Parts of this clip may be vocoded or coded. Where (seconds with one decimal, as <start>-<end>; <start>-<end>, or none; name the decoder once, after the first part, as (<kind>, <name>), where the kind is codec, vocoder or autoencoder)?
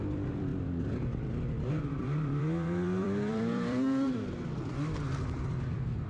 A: 0.0-6.1 (vocoder, BigVGAN v2)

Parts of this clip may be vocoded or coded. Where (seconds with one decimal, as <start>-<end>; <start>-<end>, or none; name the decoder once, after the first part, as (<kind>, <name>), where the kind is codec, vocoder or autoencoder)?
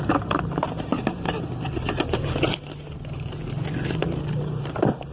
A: 0.0-0.9 (vocoder, BigVGAN v2); 4.0-5.1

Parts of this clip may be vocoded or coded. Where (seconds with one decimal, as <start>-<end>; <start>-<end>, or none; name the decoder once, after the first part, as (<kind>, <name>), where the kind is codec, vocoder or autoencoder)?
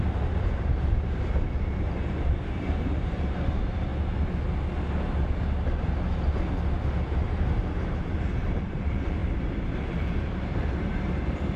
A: 0.0-3.9 (vocoder, BigVGAN v2); 7.0-11.6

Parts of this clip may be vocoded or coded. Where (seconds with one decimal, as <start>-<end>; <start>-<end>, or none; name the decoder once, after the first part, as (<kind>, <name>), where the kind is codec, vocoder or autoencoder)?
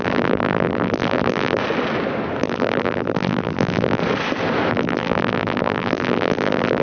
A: 0.0-1.6 (vocoder, BigVGAN v2); 2.4-4.0; 4.7-6.8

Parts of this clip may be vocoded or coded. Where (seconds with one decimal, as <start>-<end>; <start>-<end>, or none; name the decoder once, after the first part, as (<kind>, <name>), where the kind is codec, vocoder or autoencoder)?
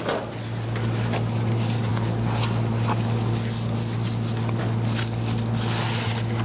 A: none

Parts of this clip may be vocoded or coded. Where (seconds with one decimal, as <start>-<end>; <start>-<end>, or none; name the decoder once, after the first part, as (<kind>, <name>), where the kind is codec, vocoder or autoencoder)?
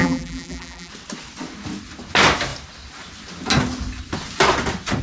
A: 0.0-0.9 (vocoder, BigVGAN v2)